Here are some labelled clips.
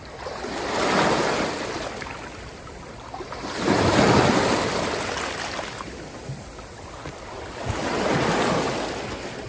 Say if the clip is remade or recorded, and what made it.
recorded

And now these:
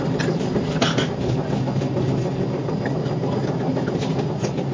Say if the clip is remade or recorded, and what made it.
recorded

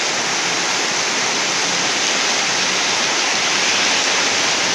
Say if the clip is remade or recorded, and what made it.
recorded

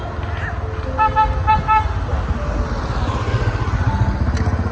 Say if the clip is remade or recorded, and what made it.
recorded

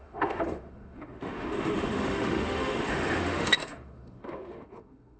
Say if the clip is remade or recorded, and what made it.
remade, autoencoder, DAC-VAE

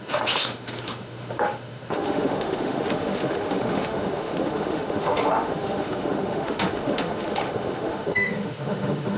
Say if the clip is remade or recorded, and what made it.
remade, autoencoder, DAC-VAE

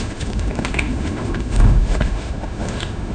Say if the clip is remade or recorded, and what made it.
remade, autoencoder, DAC-VAE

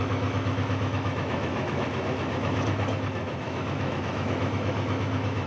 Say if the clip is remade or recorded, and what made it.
remade, autoencoder, DAC-VAE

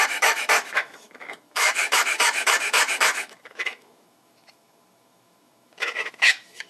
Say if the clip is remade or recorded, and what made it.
remade, autoencoder, DAC-VAE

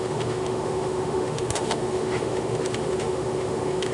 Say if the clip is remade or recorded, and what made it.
remade, autoencoder, DAC-VAE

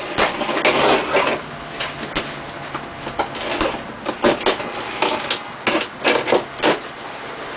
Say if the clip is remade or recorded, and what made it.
recorded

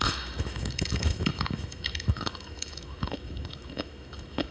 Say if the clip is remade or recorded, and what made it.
remade, autoencoder, DAC-VAE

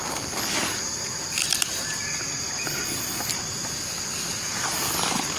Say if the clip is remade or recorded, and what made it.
recorded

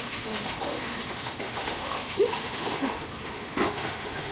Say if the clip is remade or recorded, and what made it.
remade, autoencoder, DAC-VAE